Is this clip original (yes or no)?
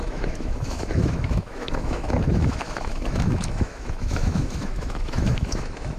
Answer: no